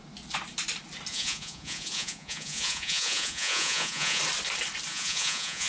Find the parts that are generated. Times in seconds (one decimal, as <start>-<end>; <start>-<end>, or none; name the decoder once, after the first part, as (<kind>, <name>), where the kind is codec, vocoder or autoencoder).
1.1-4.2 (vocoder, Vocos); 4.9-5.7